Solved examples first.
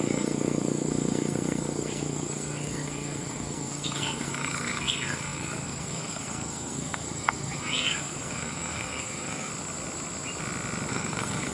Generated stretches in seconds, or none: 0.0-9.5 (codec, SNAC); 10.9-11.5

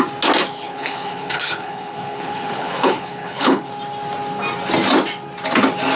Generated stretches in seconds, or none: 0.5-3.7 (codec, HILCodec)

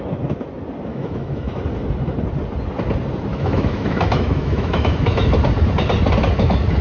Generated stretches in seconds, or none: 0.9-1.6 (autoencoder, DAC-VAE); 3.3-5.3

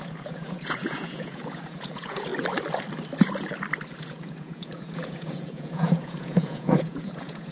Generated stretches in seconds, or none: 0.0-2.3 (vocoder, Vocos); 4.0-7.5

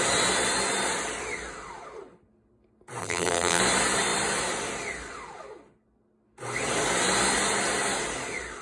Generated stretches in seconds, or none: 3.0-3.6 (vocoder, BigVGAN v2)

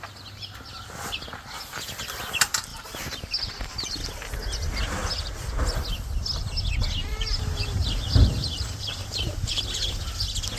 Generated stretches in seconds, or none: 2.7-3.2 (vocoder, BigVGAN v2); 7.0-9.6

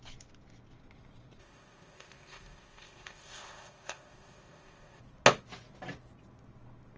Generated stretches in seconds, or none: 1.4-5.0 (codec, ZipCodec)

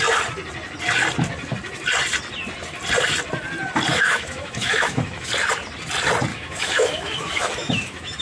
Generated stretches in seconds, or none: 3.9-5.3 (autoencoder, DAC-VAE); 6.3-8.2